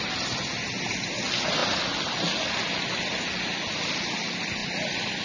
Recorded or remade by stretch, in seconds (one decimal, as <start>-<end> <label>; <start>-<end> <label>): 0.0-5.2 recorded